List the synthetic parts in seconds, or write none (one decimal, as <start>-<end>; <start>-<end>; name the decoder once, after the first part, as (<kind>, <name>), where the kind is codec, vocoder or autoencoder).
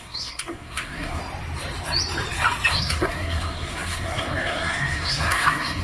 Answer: 0.0-1.2 (codec, SNAC); 2.7-5.8